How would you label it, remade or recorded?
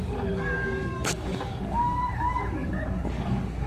remade